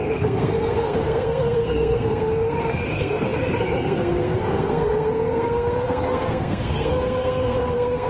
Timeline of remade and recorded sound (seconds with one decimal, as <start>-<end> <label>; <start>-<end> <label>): 0.0-8.1 remade

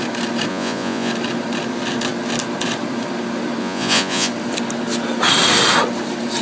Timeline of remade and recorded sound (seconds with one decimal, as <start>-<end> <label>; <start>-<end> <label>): 0.0-0.5 recorded; 0.5-1.1 remade; 1.1-3.6 recorded; 3.6-4.3 remade; 4.3-6.4 recorded

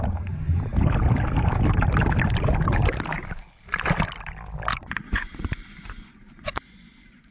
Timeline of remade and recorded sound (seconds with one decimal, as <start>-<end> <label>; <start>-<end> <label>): 0.0-4.7 recorded; 4.7-7.3 remade

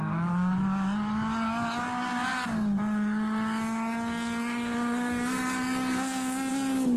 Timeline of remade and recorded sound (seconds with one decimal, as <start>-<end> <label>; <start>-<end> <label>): 0.0-7.0 remade

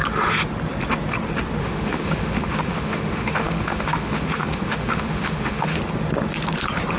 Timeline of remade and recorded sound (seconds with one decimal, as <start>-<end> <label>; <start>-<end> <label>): 0.0-1.6 recorded; 1.6-5.8 remade; 5.8-7.0 recorded